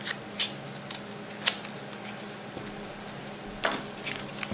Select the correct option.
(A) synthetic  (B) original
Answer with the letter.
B